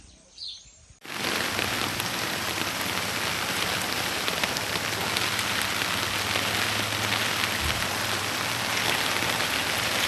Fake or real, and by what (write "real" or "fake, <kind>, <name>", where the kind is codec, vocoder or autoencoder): real